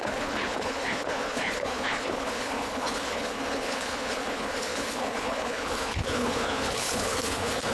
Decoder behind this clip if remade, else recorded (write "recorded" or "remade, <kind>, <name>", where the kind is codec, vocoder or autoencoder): remade, codec, HILCodec